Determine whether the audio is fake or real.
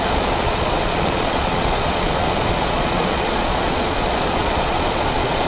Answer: fake